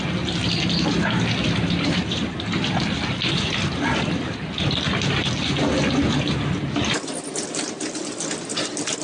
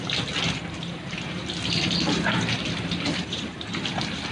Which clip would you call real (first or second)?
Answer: first